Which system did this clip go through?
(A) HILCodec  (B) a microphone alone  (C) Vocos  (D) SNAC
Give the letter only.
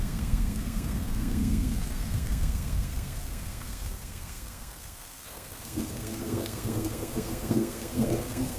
D